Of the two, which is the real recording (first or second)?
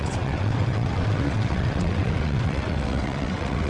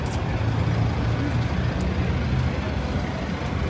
second